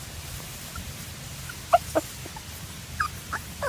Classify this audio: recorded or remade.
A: recorded